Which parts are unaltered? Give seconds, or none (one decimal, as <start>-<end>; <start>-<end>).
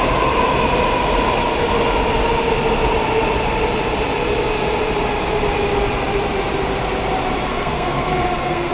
0.0-7.5